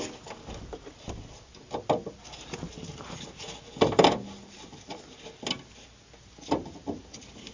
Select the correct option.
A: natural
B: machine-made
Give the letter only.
A